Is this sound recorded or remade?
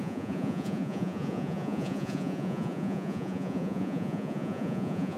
remade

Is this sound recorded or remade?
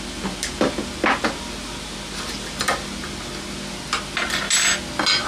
recorded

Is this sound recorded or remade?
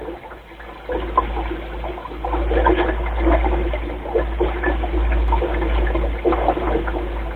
recorded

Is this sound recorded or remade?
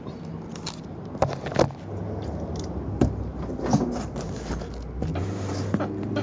recorded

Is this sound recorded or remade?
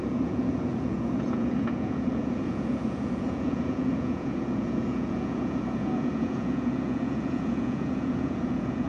remade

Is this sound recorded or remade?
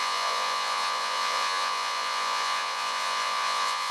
remade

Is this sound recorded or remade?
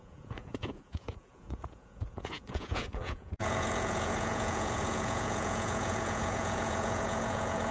remade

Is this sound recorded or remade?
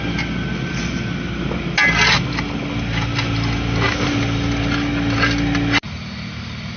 recorded